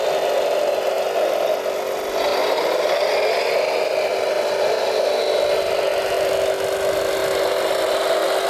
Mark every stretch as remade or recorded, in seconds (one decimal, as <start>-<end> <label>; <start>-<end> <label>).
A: 0.0-2.4 recorded; 2.4-2.9 remade; 2.9-8.5 recorded